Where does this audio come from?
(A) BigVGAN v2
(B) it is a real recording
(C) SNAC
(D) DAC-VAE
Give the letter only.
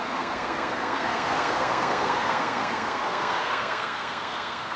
C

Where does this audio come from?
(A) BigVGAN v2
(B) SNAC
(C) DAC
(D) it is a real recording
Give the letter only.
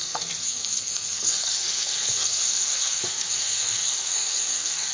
B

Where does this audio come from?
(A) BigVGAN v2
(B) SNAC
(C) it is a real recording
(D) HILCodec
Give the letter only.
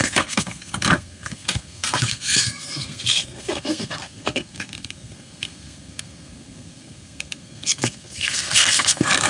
B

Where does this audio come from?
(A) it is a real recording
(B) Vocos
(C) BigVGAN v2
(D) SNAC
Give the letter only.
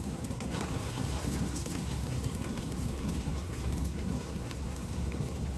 D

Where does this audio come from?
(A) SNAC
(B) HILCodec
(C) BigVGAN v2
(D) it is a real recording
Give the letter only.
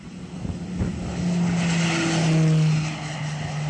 D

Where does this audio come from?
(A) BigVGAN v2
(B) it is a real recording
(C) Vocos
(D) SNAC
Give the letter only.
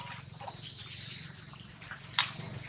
B